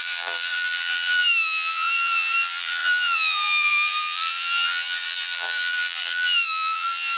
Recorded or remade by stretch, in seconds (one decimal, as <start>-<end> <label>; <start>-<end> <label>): 0.0-7.2 remade